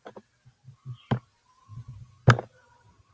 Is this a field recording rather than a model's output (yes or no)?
yes